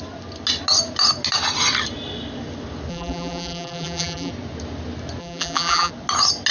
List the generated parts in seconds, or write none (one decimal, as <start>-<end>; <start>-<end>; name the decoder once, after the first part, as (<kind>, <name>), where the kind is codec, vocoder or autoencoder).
2.9-4.3 (vocoder, BigVGAN v2); 5.2-5.9